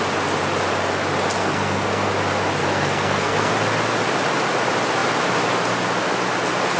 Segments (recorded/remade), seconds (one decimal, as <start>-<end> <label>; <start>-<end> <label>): 0.0-1.4 recorded; 1.4-2.1 remade; 2.1-2.6 recorded; 2.6-3.5 remade; 3.5-6.8 recorded